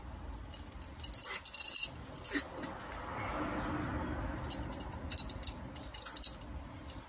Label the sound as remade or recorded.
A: recorded